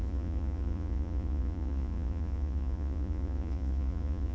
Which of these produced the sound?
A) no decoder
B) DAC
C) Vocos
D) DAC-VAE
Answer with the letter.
C